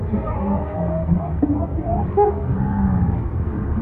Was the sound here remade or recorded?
remade